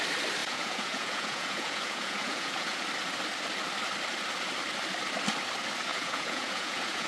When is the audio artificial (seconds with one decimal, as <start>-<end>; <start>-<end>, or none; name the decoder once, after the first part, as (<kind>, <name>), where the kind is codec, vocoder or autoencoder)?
0.4-2.8 (vocoder, Vocos); 5.9-7.1